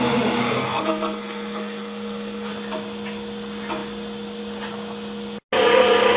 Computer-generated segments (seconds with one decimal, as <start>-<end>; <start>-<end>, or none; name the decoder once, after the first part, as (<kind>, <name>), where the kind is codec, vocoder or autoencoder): 0.4-2.5 (codec, SNAC)